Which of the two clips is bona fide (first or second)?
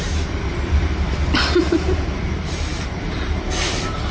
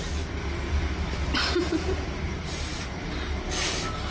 second